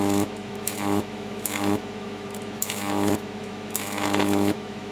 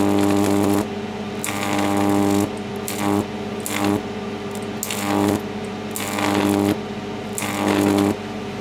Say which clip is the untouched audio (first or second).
second